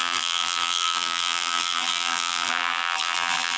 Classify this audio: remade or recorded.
remade